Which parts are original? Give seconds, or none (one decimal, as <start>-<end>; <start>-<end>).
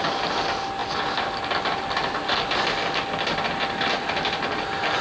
0.0-5.0